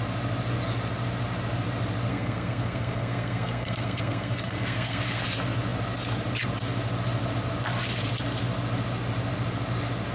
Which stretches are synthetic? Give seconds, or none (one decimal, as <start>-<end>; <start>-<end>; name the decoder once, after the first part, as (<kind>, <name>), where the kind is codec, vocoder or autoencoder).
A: 2.1-5.2 (codec, SNAC)